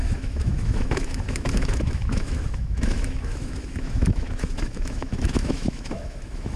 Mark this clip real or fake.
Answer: fake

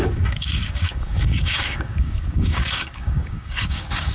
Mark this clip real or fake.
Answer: fake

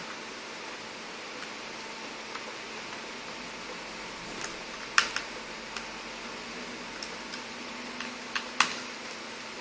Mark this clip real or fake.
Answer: real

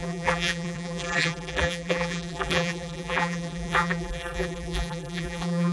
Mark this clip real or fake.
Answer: fake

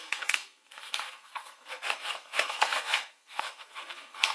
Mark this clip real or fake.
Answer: fake